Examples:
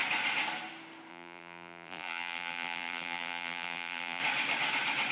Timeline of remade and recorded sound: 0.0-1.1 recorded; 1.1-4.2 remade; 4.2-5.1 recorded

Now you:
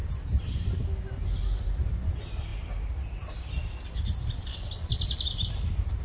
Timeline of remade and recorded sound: 0.0-2.5 recorded; 2.5-5.5 remade; 5.5-6.0 recorded

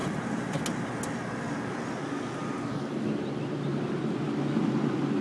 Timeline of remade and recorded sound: 0.0-0.6 remade; 0.6-5.2 recorded

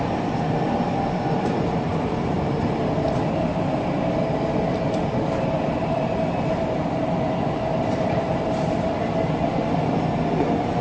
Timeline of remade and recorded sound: 0.0-1.9 recorded; 1.9-6.8 remade; 6.8-10.8 recorded

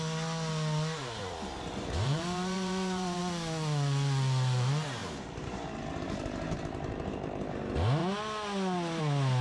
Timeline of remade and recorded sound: 0.0-1.0 recorded; 1.0-3.2 remade; 3.2-5.0 recorded; 5.0-7.2 remade; 7.2-9.4 recorded

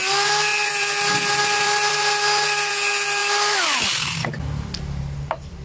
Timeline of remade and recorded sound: 0.0-5.6 recorded